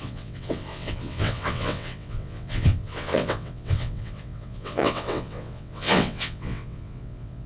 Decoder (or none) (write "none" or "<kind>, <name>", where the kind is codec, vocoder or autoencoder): vocoder, WaveNeXt